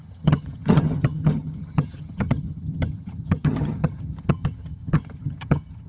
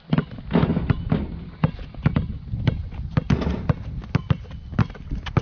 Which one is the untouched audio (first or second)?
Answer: second